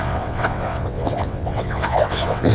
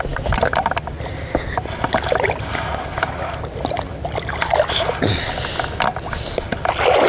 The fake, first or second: first